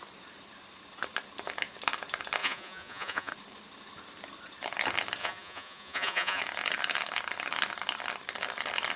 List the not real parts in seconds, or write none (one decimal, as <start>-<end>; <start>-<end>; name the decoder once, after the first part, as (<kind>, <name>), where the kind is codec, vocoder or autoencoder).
2.4-3.3 (vocoder, Vocos); 5.2-6.4